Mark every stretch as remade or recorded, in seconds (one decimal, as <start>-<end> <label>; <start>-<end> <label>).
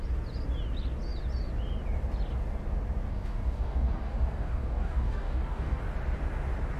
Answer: 0.0-3.1 recorded; 3.1-5.8 remade; 5.8-6.8 recorded